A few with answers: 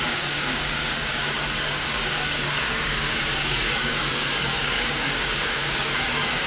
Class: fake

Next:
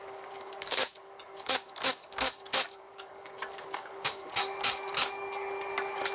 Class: fake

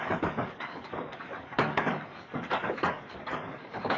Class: fake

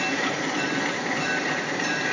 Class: real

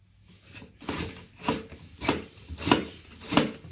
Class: real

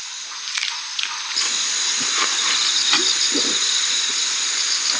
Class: real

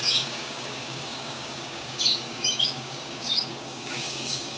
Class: fake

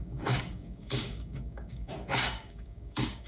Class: fake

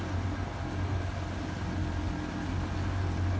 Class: real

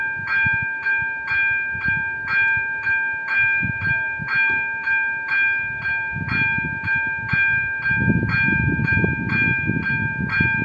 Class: real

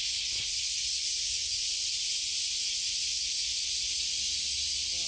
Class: real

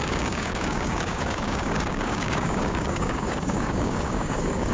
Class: fake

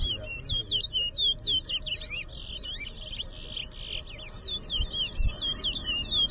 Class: real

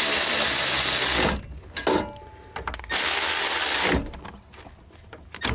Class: real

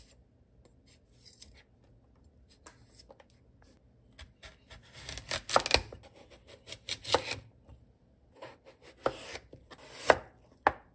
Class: real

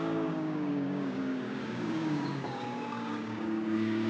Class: fake